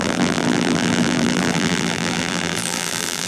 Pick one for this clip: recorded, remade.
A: remade